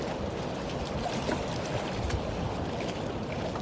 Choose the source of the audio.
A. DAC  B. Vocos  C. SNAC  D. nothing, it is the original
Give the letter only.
D